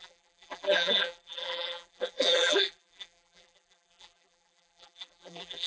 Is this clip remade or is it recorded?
remade